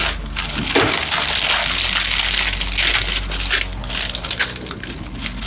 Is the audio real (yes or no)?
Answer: yes